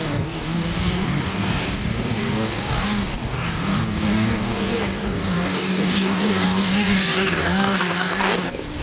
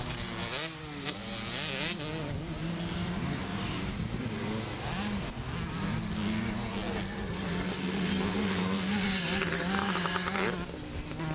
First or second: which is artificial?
first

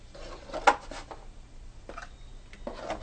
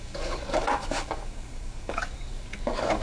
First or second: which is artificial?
second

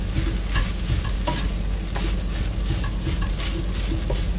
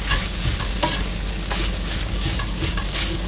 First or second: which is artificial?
second